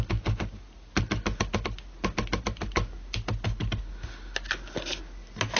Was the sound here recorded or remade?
recorded